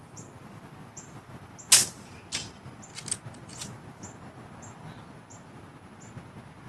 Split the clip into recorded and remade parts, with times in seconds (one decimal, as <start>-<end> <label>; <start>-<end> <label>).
0.0-0.7 remade; 0.7-6.7 recorded